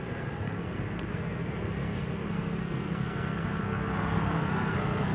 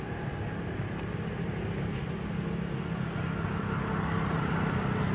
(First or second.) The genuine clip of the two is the second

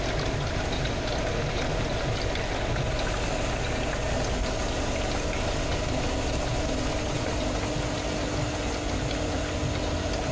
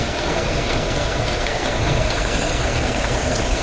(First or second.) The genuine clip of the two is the first